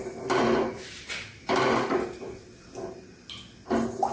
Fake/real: real